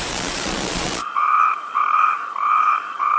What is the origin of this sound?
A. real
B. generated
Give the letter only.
B